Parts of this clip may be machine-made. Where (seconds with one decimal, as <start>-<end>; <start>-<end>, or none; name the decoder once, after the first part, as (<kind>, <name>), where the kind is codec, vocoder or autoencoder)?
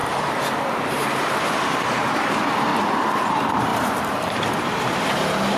0.0-2.7 (vocoder, BigVGAN v2); 3.3-5.6